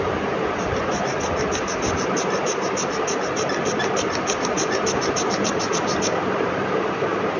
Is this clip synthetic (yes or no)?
no